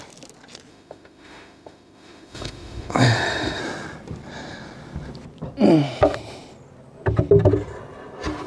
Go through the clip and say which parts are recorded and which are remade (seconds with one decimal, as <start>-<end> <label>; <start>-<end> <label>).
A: 0.0-0.7 recorded; 0.7-3.6 remade; 3.6-8.5 recorded